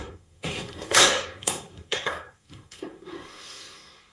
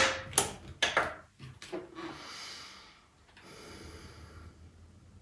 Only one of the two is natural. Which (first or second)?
second